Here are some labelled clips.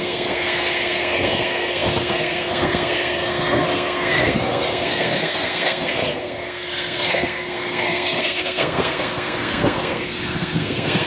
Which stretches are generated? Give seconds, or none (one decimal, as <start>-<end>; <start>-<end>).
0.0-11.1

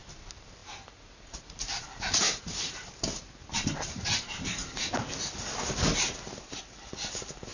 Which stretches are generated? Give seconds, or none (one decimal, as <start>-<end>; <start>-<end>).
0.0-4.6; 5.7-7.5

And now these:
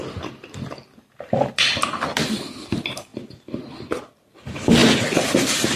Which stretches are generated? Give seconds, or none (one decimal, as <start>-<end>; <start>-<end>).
none

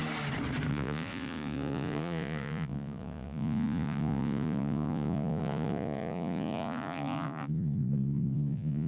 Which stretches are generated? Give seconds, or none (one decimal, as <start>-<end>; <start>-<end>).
0.7-8.9